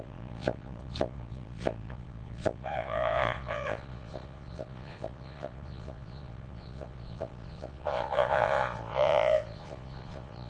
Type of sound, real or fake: fake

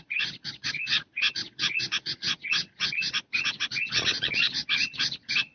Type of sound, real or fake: fake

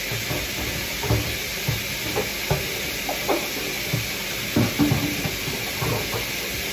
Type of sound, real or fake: real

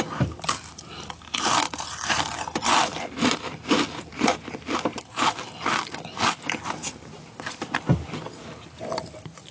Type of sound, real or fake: real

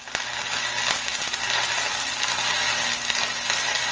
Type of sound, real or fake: real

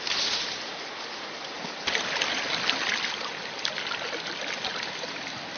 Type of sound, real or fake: real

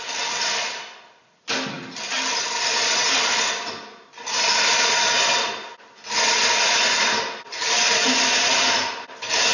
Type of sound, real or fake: real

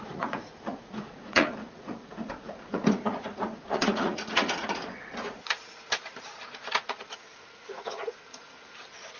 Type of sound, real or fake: fake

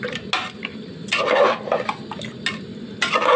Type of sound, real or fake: real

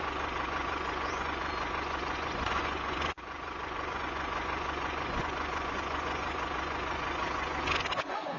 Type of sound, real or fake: fake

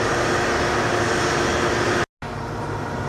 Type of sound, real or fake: real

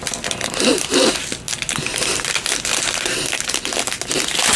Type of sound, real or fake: real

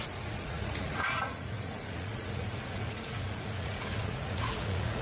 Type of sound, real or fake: fake